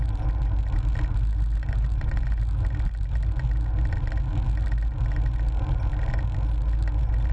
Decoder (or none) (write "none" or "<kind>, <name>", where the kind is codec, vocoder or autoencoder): none